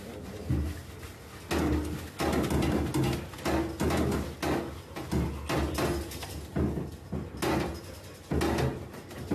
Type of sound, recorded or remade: recorded